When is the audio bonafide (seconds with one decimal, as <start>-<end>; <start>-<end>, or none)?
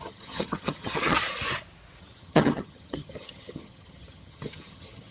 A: 1.2-2.0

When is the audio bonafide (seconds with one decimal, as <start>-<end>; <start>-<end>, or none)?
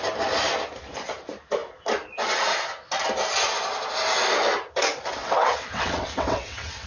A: 0.0-5.2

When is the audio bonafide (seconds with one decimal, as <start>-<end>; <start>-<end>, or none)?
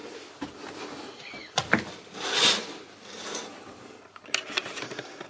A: 0.0-1.4; 4.2-5.3